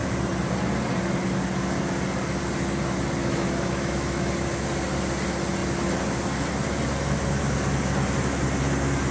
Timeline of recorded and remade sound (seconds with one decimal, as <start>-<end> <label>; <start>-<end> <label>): 0.0-3.2 recorded; 3.2-4.3 remade; 4.3-9.1 recorded